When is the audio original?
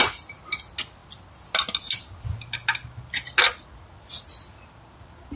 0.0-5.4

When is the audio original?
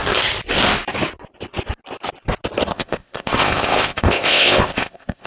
0.0-2.7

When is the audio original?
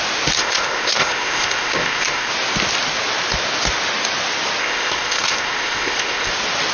0.0-0.4; 2.3-4.6; 6.3-6.7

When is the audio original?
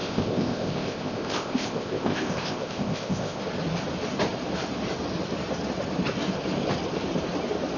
3.4-7.8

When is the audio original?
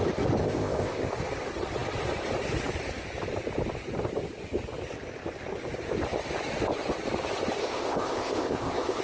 0.0-0.4; 1.1-7.6